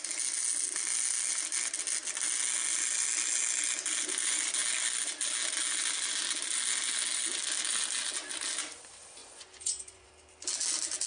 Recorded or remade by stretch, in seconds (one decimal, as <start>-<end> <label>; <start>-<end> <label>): 0.0-9.2 recorded; 9.2-10.1 remade; 10.1-11.1 recorded